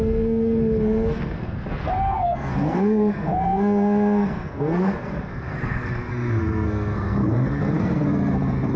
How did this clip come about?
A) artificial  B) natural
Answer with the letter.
A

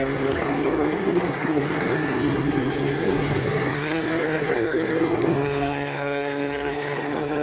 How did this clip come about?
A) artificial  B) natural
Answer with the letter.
A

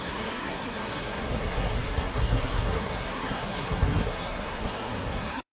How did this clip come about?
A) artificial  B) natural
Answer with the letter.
A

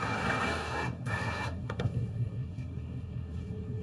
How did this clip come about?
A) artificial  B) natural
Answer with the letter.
A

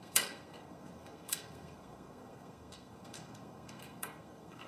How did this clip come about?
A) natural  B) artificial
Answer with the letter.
B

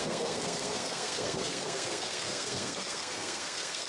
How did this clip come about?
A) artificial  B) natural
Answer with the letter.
A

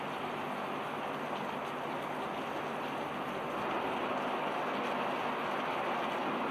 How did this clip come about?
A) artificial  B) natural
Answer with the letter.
B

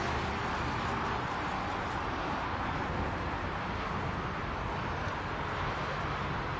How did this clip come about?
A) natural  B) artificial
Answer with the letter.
A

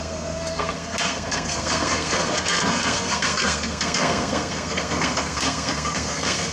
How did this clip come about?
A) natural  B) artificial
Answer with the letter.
B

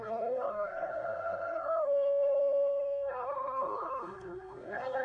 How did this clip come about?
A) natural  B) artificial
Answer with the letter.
B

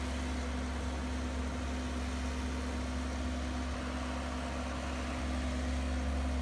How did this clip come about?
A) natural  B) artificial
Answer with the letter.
A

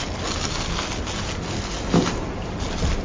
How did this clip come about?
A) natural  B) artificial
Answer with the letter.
A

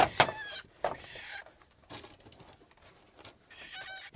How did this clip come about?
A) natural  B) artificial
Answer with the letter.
A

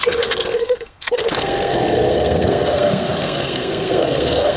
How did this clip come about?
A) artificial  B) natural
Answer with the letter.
A